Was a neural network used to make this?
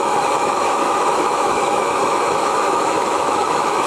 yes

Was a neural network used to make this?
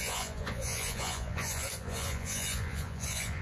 yes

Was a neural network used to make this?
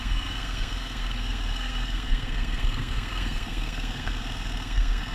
yes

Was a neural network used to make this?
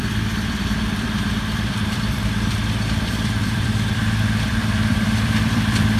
yes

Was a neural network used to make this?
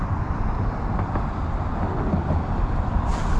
no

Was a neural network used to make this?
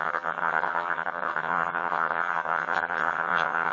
yes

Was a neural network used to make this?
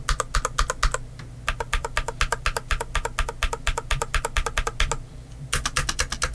no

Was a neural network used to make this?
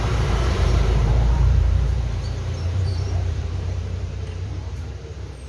yes